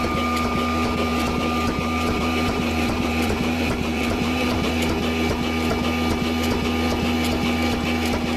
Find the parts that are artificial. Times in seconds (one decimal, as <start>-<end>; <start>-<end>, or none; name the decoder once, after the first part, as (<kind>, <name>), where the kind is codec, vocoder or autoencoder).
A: 1.1-4.7 (vocoder, BigVGAN v2)